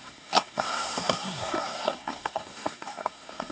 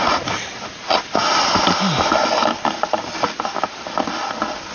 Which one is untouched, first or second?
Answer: second